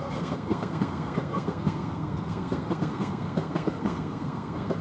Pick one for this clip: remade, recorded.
remade